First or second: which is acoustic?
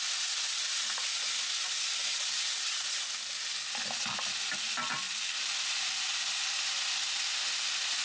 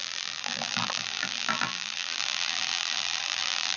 first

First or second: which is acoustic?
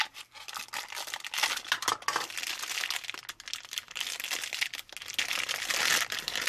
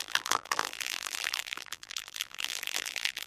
first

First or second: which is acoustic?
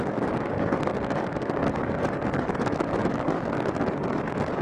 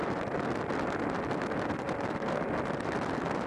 second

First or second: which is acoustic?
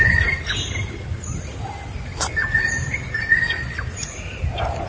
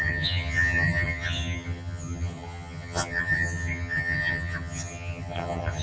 first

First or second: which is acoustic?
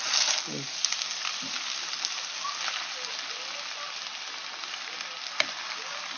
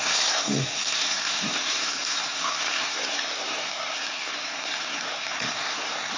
first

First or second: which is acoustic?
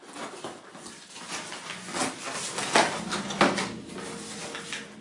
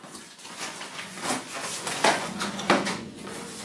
first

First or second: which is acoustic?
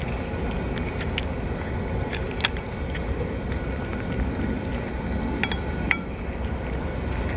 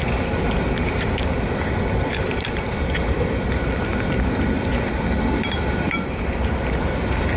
first